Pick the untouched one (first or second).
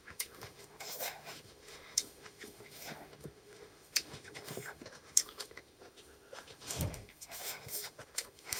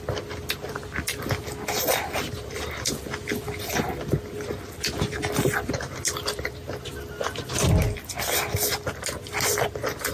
second